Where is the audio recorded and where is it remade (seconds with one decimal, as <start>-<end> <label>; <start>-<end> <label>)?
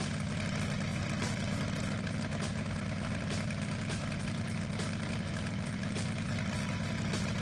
0.0-7.4 recorded